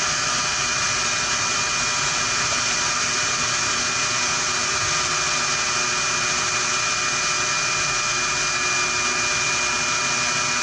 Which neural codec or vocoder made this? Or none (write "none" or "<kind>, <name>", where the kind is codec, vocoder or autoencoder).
none